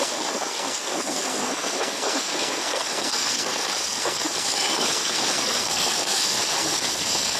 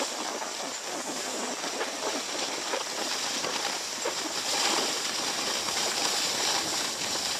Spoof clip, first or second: first